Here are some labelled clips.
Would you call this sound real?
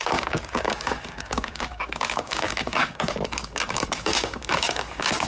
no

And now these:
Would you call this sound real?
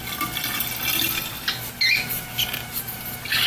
yes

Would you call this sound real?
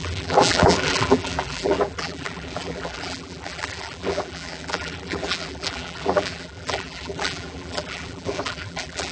no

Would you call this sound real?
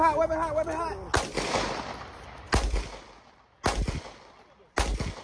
yes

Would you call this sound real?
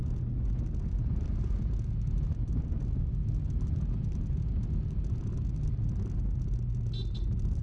yes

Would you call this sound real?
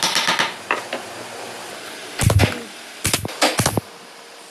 yes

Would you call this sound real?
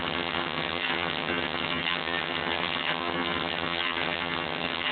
no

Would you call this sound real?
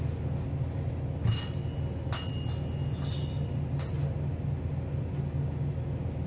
yes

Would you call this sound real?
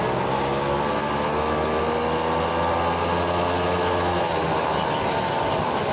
yes